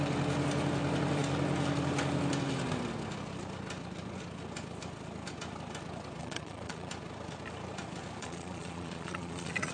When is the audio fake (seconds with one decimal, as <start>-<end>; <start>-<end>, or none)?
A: 6.2-6.9; 8.2-9.7